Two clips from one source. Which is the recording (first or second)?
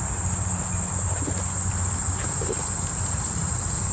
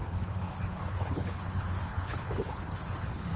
first